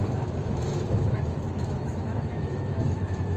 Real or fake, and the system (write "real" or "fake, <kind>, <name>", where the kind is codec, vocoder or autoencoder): fake, autoencoder, DAC-VAE